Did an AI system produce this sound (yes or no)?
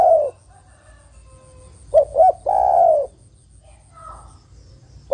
no